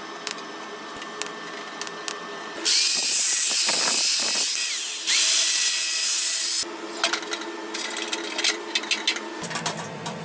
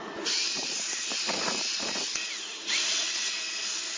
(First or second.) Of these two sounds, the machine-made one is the second